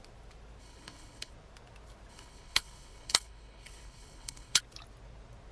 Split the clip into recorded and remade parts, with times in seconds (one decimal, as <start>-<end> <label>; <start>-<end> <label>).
0.0-0.6 recorded; 0.6-1.3 remade; 1.3-2.1 recorded; 2.1-4.6 remade; 4.6-5.5 recorded